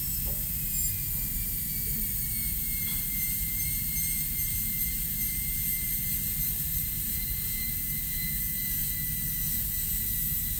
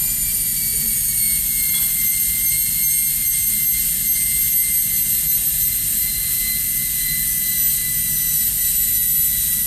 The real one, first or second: second